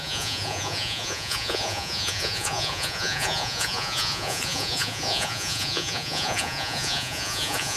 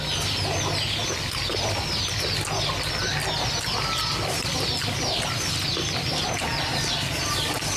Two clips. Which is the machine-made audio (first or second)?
first